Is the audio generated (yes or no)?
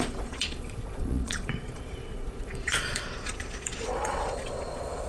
yes